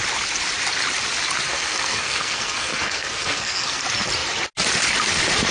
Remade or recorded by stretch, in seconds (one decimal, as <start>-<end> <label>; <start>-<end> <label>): 0.0-1.5 recorded; 1.5-3.8 remade; 3.8-5.5 recorded